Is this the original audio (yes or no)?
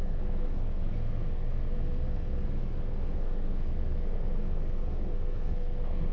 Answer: no